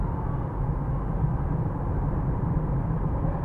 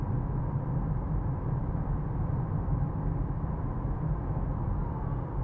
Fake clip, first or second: first